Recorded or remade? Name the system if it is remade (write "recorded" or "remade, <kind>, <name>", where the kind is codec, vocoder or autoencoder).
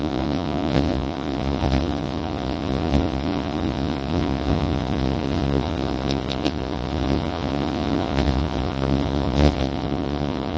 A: remade, vocoder, Vocos